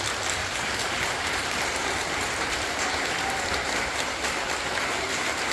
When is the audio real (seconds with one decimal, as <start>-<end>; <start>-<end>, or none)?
0.0-0.4; 3.7-5.5